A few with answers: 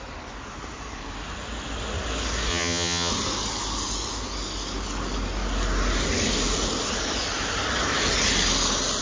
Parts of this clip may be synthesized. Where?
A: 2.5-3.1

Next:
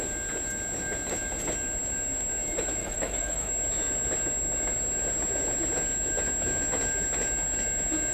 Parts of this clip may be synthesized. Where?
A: 2.8-3.5

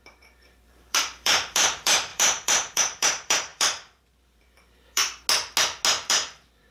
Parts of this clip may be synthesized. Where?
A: 0.0-5.0; 6.1-6.7

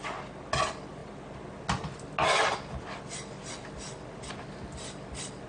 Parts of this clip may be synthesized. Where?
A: none

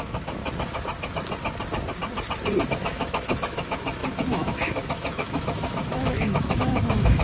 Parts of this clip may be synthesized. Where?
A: 0.0-0.4; 2.7-7.2

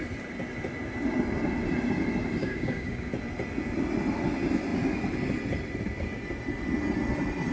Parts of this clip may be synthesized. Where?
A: 2.4-3.1

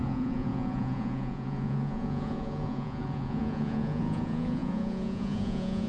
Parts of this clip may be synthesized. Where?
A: 0.0-5.9

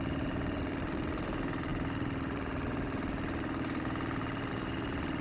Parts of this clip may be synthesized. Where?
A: 0.0-5.2